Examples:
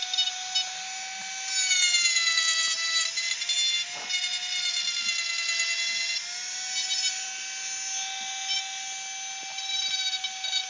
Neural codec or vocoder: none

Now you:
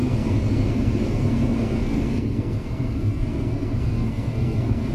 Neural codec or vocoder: codec, SNAC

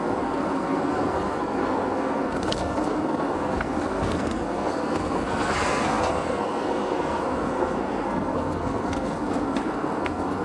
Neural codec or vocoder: codec, SNAC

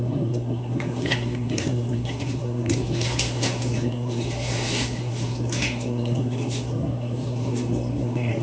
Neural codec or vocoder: codec, SNAC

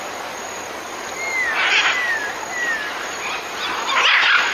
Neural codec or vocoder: none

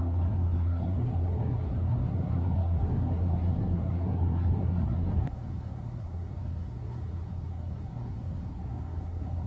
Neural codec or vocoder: codec, SNAC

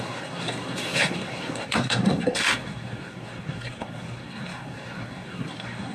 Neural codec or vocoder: codec, SNAC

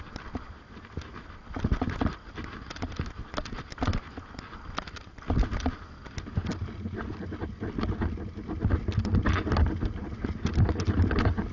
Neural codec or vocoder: none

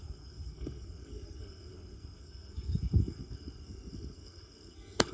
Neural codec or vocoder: codec, SNAC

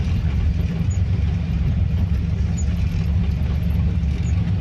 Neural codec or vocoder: none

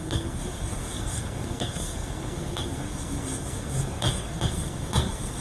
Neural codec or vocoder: codec, SNAC